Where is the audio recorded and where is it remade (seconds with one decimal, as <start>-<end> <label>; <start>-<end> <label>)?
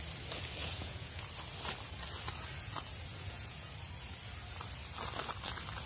0.0-0.6 recorded; 0.6-1.3 remade; 1.3-3.1 recorded; 3.1-3.7 remade; 3.7-5.9 recorded